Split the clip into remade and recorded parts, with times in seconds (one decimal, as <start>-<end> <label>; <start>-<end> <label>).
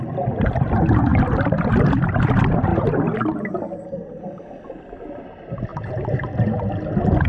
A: 0.0-7.3 recorded